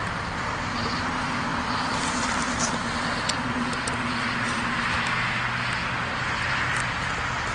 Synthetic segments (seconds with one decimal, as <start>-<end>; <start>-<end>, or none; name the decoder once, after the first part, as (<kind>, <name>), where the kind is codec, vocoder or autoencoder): none